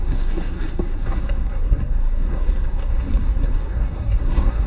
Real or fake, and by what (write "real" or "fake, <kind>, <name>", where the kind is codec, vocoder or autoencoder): fake, codec, SNAC